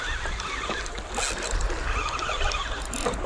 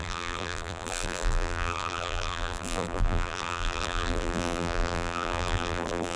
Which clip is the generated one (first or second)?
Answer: second